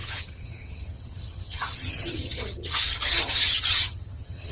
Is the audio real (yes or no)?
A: no